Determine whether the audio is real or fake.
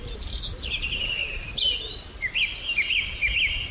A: real